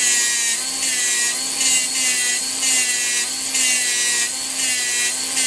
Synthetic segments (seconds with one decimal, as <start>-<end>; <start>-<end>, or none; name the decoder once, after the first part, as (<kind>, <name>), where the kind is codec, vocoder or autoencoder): none